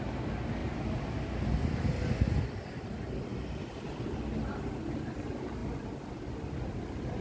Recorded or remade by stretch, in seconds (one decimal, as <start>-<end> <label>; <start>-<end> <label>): 0.0-7.2 recorded